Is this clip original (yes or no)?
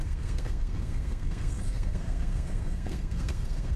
no